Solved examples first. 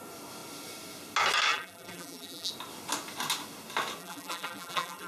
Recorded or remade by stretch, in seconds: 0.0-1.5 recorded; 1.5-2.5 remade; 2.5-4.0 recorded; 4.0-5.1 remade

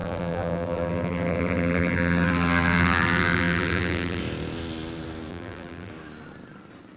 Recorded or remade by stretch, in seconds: 0.0-4.2 remade; 4.2-5.3 recorded; 5.3-5.9 remade; 5.9-7.0 recorded

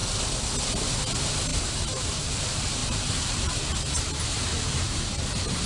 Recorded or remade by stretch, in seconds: 0.0-1.5 recorded; 1.5-2.2 remade; 2.2-4.5 recorded; 4.5-5.0 remade; 5.0-5.7 recorded

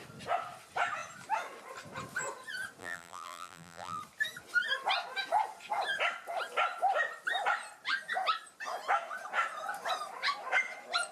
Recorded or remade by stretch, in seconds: 0.0-2.8 recorded; 2.8-4.0 remade; 4.0-11.1 recorded

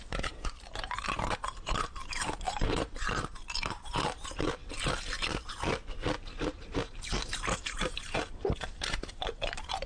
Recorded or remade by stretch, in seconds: 0.0-4.6 remade; 4.6-6.6 recorded; 6.6-9.9 remade